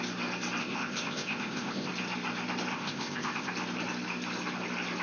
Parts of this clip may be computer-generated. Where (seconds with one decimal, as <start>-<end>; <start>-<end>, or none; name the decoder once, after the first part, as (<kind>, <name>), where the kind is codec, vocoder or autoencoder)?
0.6-1.9 (codec, ZipCodec); 2.7-3.5